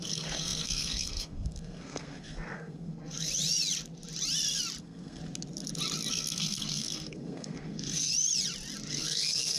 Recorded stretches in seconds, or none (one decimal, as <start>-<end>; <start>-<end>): 3.3-4.8; 5.2-6.1; 8.1-8.9